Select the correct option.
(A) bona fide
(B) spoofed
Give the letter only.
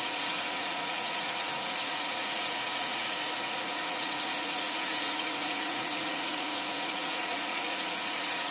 B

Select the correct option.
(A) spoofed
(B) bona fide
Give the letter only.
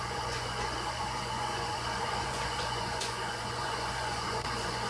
A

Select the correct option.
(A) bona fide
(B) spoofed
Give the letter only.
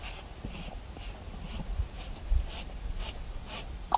A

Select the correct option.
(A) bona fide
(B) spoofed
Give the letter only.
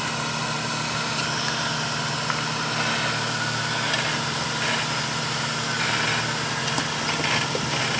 A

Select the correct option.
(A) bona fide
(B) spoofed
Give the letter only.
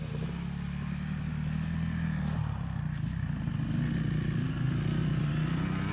A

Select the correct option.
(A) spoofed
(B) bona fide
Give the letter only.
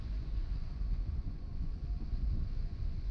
A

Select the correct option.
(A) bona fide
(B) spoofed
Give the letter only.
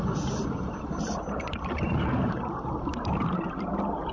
A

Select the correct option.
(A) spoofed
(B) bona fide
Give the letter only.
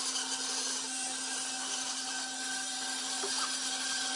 B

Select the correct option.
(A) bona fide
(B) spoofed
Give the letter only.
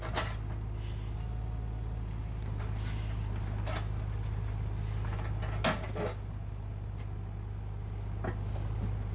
A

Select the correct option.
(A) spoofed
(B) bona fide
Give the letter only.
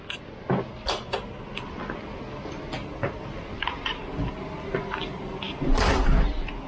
B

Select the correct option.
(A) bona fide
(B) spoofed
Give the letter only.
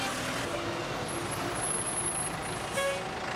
A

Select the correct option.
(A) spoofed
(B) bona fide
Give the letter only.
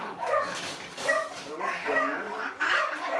A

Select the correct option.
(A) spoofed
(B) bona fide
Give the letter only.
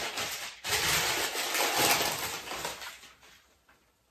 B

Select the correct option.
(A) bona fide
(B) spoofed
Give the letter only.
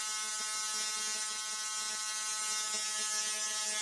A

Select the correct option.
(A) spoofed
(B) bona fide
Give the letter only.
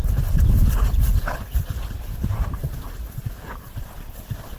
A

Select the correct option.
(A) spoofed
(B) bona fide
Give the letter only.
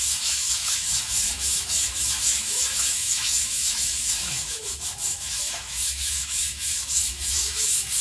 A